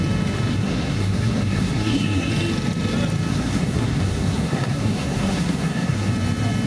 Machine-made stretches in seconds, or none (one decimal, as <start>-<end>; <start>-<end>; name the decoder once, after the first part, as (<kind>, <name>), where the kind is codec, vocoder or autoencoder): 0.5-2.3 (codec, SNAC); 3.3-6.1